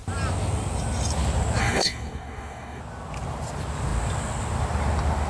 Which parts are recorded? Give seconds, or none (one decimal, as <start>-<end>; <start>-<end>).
0.0-1.6; 2.8-5.3